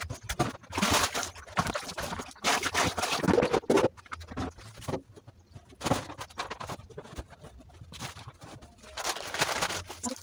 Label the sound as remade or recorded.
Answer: recorded